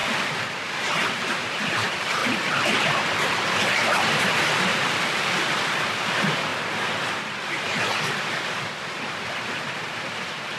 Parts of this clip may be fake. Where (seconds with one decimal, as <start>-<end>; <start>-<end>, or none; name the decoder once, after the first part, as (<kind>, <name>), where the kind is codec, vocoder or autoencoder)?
1.5-2.2 (vocoder, BigVGAN v2); 4.3-6.5; 9.2-10.6